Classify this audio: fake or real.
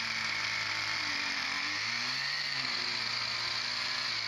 real